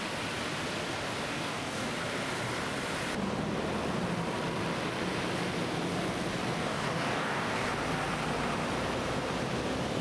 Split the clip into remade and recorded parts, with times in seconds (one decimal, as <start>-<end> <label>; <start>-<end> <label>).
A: 0.0-1.3 recorded; 1.3-1.9 remade; 1.9-6.6 recorded; 6.6-7.7 remade; 7.7-10.0 recorded